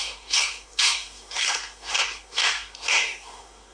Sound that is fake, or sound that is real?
fake